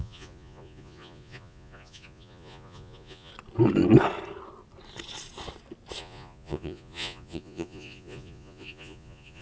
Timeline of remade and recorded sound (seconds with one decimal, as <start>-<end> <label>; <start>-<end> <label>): 0.0-3.3 remade; 3.3-6.0 recorded; 6.0-9.4 remade